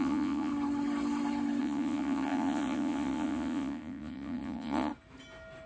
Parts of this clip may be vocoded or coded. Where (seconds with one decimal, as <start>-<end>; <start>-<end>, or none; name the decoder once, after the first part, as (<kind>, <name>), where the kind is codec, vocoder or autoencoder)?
0.0-0.5 (vocoder, Vocos); 1.6-4.9